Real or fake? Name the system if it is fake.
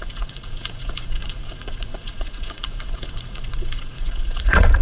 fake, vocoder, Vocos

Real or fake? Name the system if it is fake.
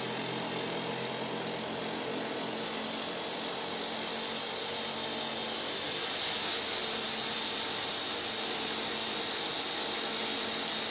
real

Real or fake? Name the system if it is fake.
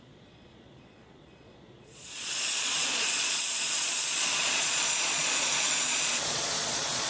fake, vocoder, Vocos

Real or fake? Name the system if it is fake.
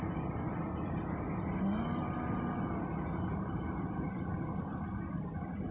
real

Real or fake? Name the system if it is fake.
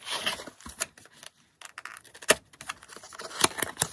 real